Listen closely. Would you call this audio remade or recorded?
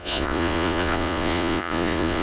remade